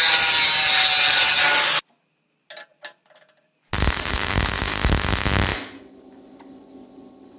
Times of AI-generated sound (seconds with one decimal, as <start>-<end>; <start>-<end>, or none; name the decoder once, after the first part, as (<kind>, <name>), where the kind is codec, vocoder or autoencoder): none